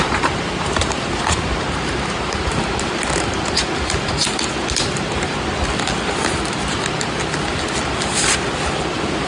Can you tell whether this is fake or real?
real